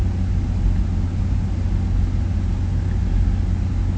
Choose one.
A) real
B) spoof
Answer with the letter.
A